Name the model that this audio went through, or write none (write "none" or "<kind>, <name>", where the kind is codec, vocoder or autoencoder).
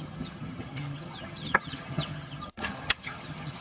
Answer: vocoder, HiFi-GAN